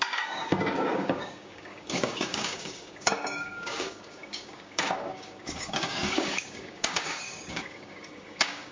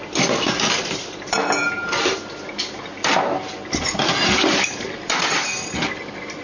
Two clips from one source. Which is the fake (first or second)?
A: first